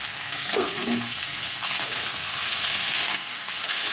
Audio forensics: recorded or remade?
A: remade